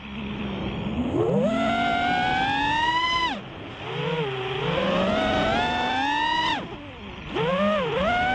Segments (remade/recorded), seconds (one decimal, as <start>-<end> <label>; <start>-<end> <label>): 0.0-8.3 recorded